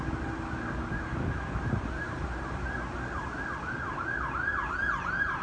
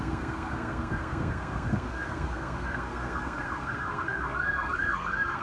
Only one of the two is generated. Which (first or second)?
second